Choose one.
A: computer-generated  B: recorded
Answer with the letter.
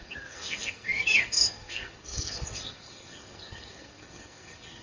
A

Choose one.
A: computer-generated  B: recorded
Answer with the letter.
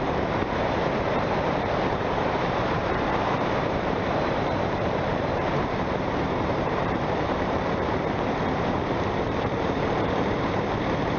A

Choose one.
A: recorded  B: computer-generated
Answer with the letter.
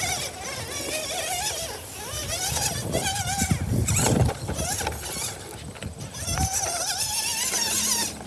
A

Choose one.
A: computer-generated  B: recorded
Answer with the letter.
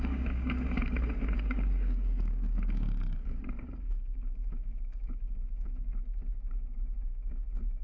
A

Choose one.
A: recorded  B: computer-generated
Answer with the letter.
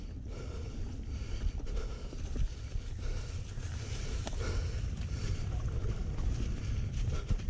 B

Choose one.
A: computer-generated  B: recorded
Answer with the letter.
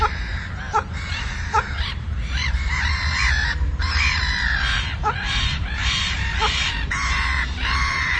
A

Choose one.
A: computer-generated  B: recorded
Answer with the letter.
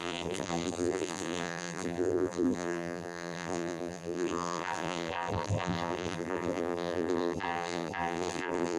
A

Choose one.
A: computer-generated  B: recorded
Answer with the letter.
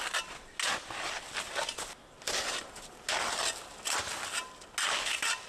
B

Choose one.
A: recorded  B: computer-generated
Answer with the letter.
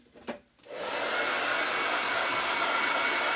A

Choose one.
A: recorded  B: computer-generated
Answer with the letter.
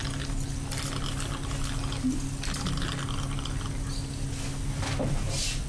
A